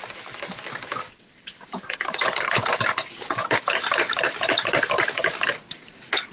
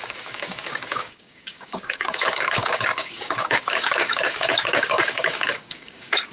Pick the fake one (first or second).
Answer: second